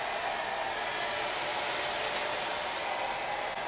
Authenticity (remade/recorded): recorded